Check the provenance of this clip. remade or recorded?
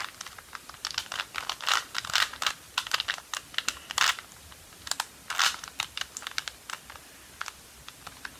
recorded